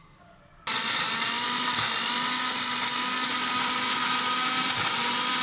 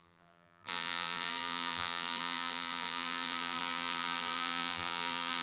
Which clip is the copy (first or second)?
second